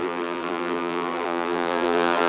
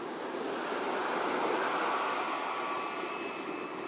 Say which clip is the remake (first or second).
first